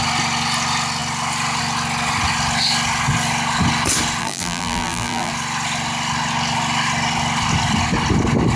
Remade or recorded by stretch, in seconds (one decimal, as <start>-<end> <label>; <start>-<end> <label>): 0.0-4.2 recorded; 4.2-5.3 remade; 5.3-8.6 recorded